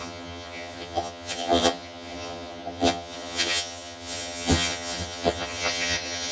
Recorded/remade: remade